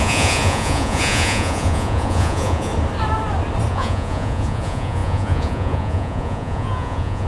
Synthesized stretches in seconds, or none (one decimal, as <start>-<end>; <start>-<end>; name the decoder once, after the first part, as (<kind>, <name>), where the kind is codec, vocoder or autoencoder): 0.0-2.7 (vocoder, Vocos); 3.7-7.3